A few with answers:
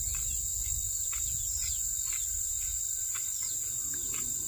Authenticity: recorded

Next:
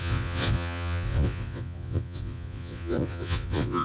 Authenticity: remade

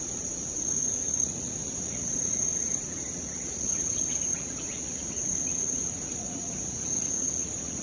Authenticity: remade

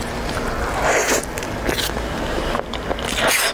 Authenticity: recorded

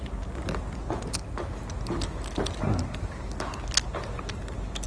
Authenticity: recorded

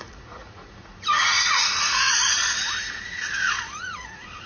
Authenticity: remade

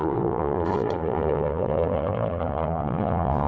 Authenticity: remade